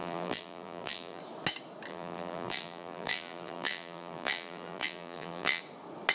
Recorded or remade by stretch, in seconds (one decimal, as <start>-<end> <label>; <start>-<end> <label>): 0.0-1.2 remade; 1.2-1.9 recorded; 1.9-5.6 remade; 5.6-6.1 recorded